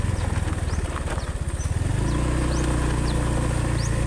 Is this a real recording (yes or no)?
yes